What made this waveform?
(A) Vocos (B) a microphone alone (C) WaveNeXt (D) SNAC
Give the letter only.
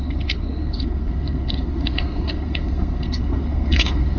D